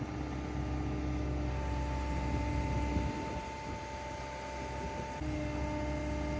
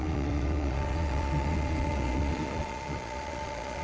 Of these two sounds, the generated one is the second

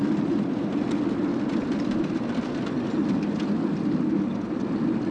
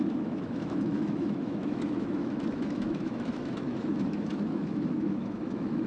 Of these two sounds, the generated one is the second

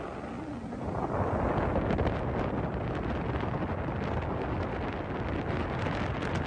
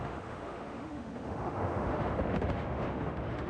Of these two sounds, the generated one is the second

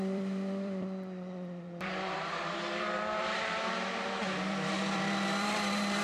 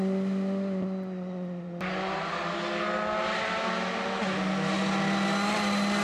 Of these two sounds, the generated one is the first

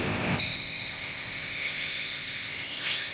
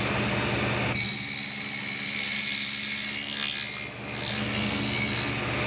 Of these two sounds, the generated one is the first